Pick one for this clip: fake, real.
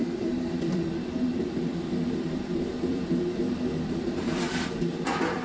fake